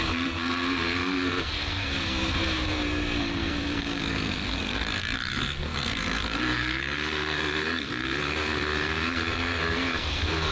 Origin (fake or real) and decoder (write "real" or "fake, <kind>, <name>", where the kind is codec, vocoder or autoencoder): fake, codec, SNAC